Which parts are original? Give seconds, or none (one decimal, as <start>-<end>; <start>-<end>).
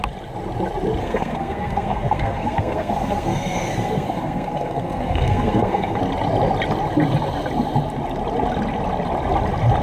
0.0-1.0; 6.0-9.8